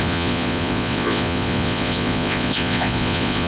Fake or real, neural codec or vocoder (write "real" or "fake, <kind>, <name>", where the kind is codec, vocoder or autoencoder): fake, vocoder, Vocos